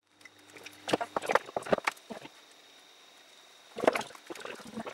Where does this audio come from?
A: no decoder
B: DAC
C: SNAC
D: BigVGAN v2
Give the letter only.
A